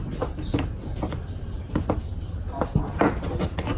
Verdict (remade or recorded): recorded